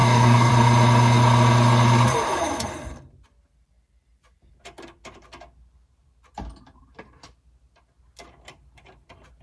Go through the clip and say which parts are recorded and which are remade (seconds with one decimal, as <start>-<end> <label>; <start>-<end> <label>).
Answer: 0.0-0.5 remade; 0.5-9.4 recorded